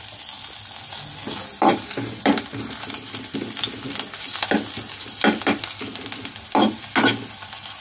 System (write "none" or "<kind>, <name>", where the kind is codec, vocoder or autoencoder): none